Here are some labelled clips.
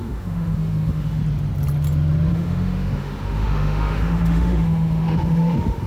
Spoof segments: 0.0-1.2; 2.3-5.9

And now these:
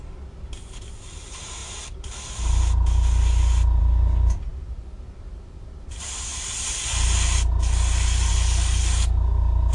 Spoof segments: none

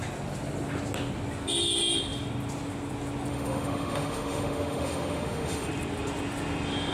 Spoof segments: 3.3-5.7

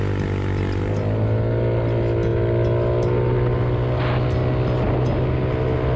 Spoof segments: none

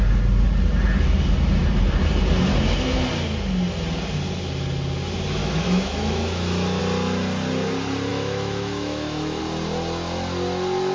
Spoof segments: 5.4-6.8; 8.1-9.4

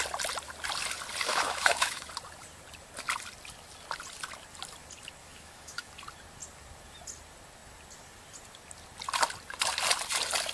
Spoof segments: 1.3-2.1; 5.2-5.9

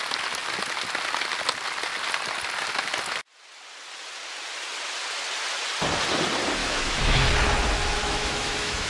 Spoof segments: 6.6-7.2; 8.0-8.9